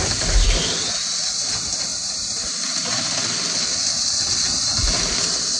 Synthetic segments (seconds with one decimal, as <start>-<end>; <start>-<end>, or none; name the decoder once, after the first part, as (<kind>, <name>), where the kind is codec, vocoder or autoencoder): 1.9-3.2 (vocoder, BigVGAN v2)